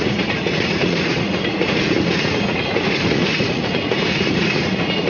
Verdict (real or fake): fake